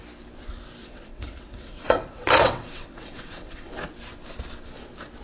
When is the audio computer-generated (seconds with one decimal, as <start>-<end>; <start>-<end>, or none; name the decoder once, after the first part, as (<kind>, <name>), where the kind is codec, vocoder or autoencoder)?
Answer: 0.8-3.7 (vocoder, WaveNeXt)